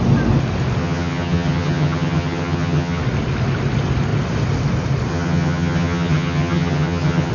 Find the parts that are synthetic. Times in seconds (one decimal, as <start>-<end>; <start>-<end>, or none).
0.8-3.0; 5.1-7.3